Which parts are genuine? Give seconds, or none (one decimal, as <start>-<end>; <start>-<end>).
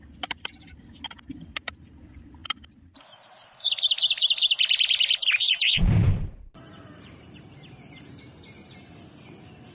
0.0-2.4; 3.7-5.2; 8.2-9.7